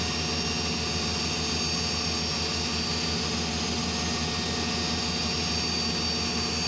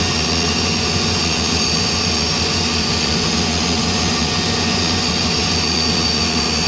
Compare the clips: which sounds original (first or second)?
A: first